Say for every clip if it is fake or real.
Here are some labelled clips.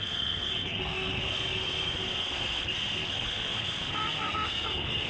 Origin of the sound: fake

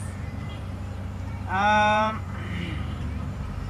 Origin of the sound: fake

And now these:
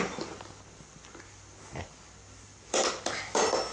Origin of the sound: fake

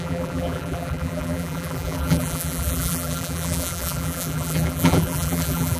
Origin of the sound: fake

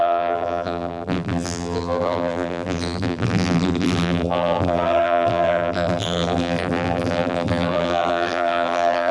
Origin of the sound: fake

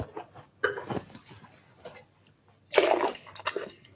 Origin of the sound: real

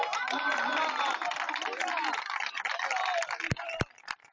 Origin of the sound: real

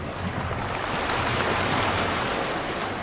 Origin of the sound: real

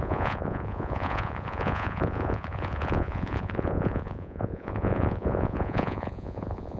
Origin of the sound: fake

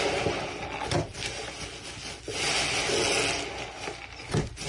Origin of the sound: real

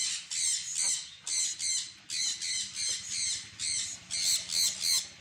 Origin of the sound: real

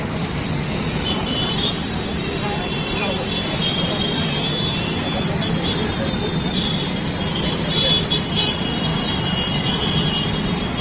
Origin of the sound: fake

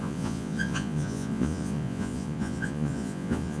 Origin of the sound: fake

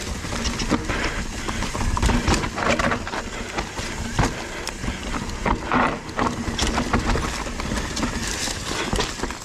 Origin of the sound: real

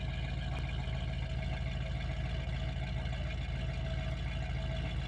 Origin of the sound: real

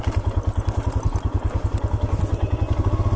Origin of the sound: real